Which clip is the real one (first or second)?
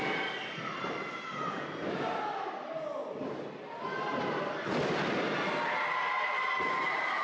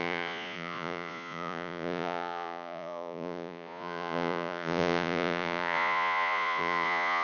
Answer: first